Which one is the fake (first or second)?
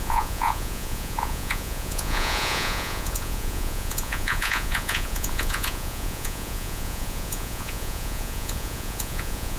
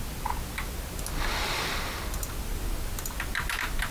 first